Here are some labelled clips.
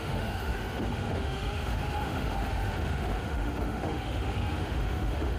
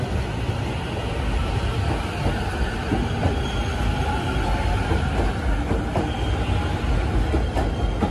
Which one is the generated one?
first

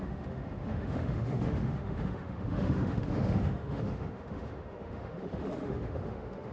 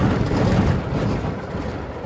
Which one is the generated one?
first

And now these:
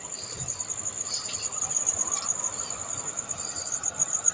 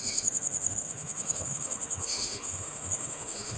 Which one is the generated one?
second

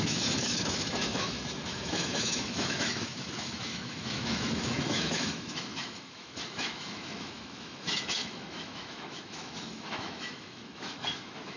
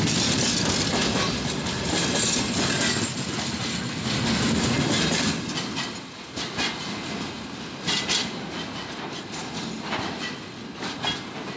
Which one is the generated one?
first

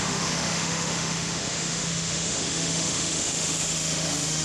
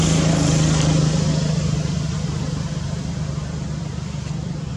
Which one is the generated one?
first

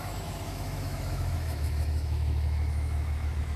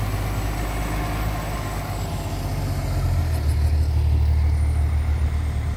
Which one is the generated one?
first